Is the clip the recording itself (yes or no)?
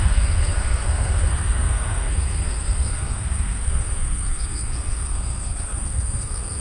no